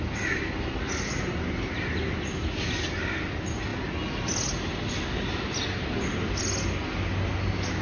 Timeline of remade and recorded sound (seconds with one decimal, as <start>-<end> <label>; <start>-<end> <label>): 0.0-7.8 recorded